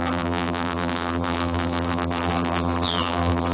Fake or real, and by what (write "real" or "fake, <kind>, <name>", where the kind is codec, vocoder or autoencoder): fake, vocoder, BigVGAN v2